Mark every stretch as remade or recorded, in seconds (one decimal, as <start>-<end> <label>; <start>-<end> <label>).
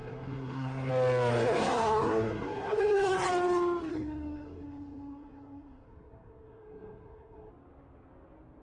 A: 0.0-0.9 remade; 0.9-1.3 recorded; 1.3-3.3 remade; 3.3-3.9 recorded; 3.9-7.5 remade; 7.5-8.6 recorded